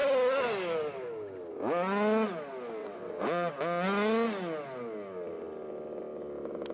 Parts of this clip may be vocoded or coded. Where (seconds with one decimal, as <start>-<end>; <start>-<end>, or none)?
2.8-3.5